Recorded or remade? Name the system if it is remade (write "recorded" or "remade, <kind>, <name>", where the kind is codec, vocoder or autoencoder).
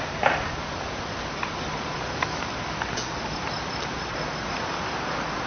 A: recorded